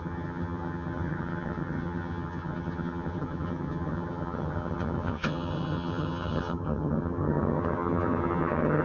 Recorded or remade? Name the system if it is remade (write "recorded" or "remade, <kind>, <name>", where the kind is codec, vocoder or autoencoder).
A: remade, vocoder, HiFi-GAN